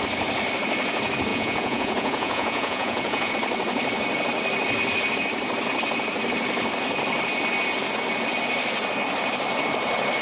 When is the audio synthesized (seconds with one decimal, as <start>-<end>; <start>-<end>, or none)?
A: 1.3-3.3